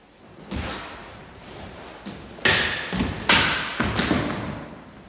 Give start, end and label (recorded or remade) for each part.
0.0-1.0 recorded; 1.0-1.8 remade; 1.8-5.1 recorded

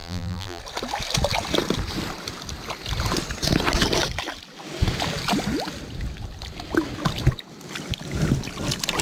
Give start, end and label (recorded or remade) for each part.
0.0-0.6 remade; 0.6-9.0 recorded

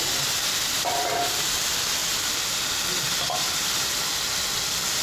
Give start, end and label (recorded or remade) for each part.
0.0-5.0 recorded

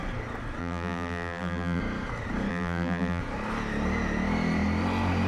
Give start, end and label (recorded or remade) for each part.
0.0-0.6 recorded; 0.6-1.8 remade; 1.8-2.5 recorded; 2.5-3.2 remade; 3.2-5.3 recorded